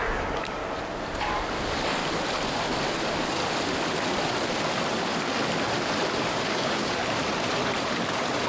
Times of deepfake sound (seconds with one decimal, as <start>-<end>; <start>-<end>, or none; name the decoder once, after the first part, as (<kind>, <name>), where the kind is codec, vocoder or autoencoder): 0.0-0.6 (codec, DAC); 1.2-2.0; 2.9-3.4; 6.2-7.0